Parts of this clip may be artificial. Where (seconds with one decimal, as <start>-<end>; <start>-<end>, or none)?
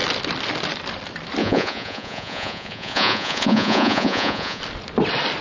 1.4-4.6